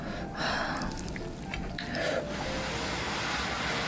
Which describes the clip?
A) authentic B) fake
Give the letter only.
A